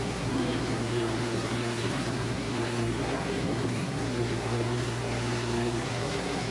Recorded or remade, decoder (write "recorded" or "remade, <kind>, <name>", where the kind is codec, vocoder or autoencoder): remade, codec, SNAC